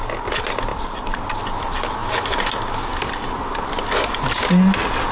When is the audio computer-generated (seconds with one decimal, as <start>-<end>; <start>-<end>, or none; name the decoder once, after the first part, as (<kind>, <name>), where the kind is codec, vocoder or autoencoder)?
0.7-1.2 (vocoder, BigVGAN v2)